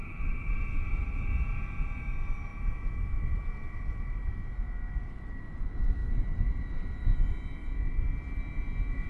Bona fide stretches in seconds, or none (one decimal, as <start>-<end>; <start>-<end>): 0.0-6.0; 6.6-9.1